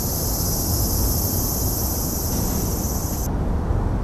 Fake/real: real